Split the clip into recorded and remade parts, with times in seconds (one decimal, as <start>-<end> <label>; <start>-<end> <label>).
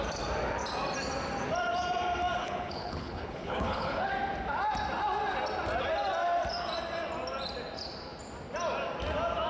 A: 0.0-2.4 recorded; 2.4-4.1 remade; 4.1-9.5 recorded